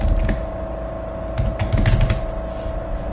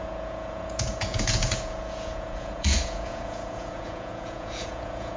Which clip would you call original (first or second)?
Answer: first